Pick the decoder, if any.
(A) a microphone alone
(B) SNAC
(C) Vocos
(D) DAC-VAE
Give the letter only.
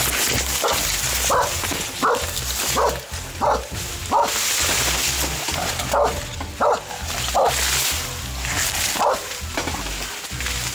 A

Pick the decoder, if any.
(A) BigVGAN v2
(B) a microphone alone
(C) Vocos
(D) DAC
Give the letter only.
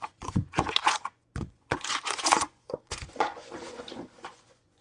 C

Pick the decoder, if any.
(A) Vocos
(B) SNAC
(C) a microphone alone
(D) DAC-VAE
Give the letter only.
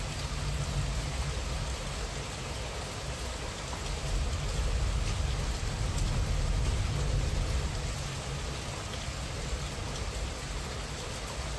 C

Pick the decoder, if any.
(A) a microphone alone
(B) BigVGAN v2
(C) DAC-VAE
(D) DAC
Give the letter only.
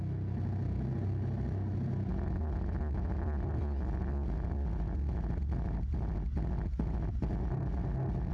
A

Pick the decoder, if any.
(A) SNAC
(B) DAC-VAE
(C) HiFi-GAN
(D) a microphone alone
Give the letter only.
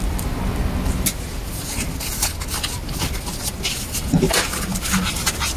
D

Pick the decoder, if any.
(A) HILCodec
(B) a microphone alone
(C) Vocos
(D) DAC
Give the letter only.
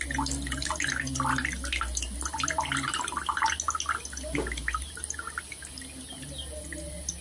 B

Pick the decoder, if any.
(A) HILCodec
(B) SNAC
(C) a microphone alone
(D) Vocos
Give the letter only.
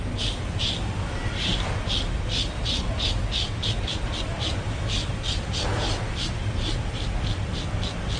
C